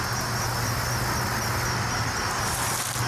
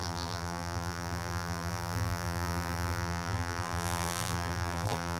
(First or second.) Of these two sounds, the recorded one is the first